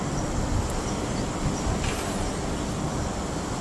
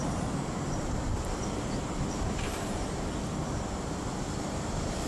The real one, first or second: first